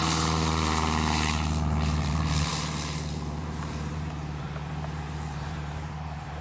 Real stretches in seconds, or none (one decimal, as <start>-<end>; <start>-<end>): none